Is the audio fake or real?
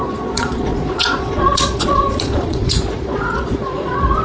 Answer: fake